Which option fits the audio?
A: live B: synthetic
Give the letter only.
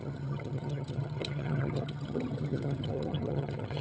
B